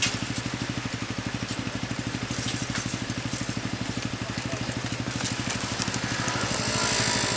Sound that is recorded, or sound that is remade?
recorded